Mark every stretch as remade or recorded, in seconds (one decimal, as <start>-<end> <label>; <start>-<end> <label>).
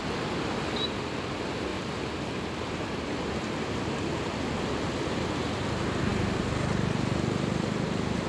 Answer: 0.0-8.3 recorded